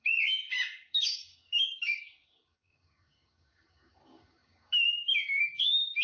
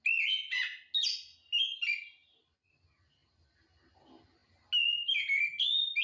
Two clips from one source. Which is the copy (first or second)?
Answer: first